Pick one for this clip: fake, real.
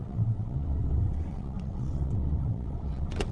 fake